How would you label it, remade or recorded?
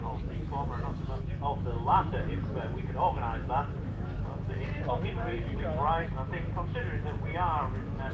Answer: remade